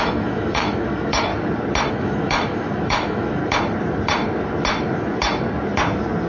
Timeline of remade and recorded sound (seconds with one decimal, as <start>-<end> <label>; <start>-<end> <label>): 0.0-1.3 remade; 1.3-1.9 recorded; 1.9-3.4 remade; 3.4-6.3 recorded